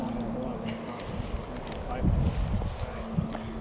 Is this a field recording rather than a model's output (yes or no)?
yes